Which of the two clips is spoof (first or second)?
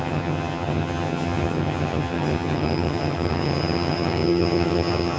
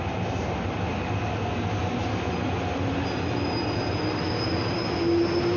first